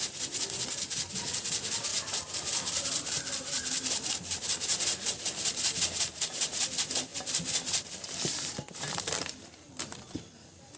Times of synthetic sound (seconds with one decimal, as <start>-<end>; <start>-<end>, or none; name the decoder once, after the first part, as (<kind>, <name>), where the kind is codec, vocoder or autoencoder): 1.9-4.4 (vocoder, BigVGAN v2); 7.1-10.8